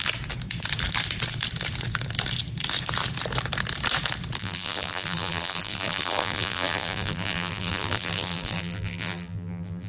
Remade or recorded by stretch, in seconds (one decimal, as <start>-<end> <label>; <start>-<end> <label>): 0.0-4.4 recorded; 4.4-9.9 remade